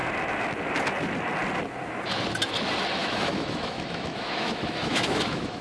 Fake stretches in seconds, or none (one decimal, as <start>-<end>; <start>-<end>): 3.0-5.6